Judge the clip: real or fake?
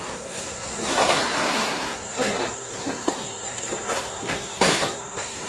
fake